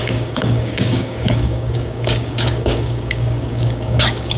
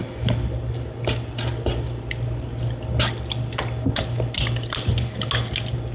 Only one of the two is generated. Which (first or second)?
first